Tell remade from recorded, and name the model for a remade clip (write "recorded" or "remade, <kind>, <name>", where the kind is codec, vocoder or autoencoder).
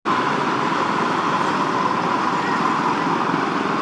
recorded